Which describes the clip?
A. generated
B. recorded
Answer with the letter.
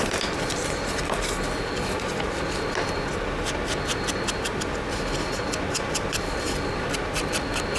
B